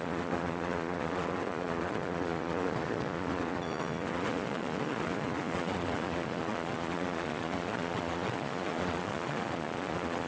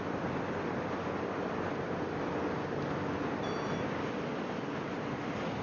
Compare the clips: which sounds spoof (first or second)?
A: first